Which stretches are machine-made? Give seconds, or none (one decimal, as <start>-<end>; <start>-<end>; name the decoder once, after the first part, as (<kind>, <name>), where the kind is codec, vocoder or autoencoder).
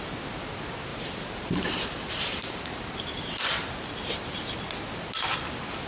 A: 0.9-4.4 (vocoder, BigVGAN v2)